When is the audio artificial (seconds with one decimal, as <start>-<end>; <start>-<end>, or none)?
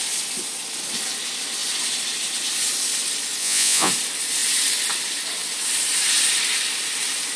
3.4-3.9